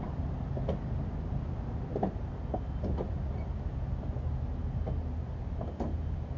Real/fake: real